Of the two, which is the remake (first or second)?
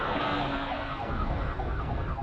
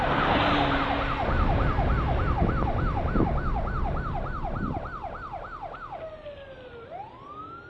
first